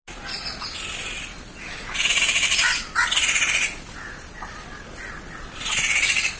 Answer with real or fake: real